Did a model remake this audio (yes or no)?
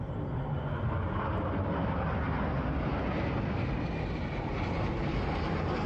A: no